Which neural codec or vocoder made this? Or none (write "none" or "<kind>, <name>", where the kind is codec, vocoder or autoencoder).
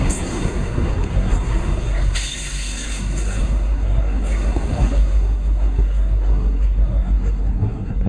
codec, SNAC